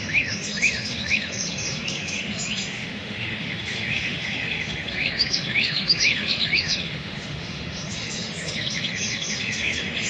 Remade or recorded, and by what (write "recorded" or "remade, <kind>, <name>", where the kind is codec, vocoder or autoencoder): remade, autoencoder, DAC-VAE